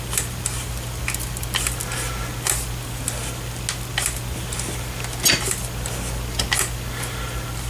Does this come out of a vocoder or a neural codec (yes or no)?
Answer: no